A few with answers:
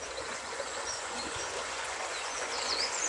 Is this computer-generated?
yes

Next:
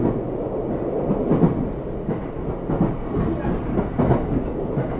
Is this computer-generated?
no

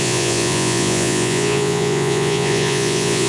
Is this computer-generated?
yes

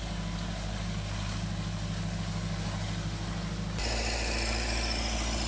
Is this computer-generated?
no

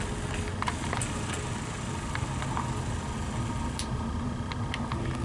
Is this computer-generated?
no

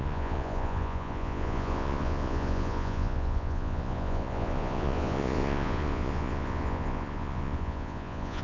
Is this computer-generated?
yes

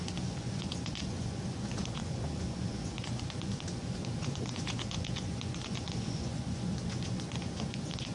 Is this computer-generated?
yes